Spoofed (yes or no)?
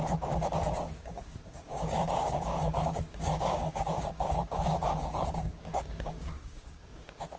yes